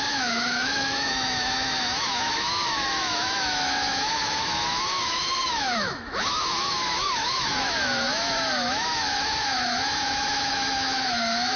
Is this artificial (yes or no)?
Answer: yes